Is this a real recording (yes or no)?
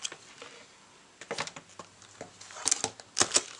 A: yes